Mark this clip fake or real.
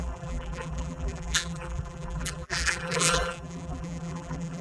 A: fake